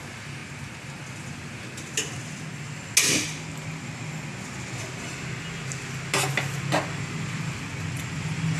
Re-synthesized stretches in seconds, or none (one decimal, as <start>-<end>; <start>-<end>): none